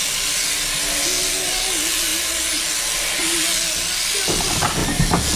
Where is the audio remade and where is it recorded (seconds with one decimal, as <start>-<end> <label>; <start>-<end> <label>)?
0.0-5.4 recorded

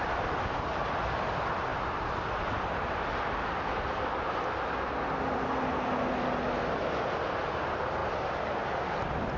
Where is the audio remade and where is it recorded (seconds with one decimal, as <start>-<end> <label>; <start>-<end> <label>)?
0.0-9.4 recorded